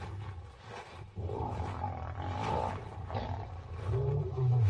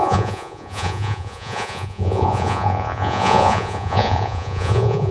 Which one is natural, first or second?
first